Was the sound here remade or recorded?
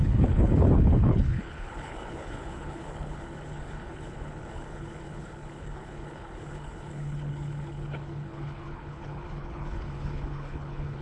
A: remade